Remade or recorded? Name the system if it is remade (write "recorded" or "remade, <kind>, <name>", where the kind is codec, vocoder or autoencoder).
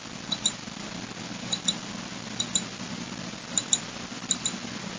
recorded